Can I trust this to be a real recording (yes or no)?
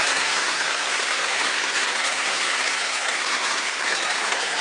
no